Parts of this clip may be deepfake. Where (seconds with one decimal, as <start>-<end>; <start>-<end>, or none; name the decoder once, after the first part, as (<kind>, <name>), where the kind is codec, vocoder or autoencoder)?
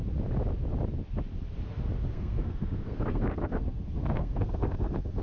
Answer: 2.1-5.2 (codec, SNAC)